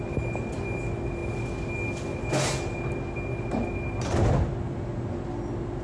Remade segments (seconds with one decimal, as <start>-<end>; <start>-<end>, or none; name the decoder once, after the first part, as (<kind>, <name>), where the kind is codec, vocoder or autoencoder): none